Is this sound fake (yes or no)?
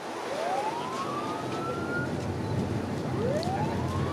no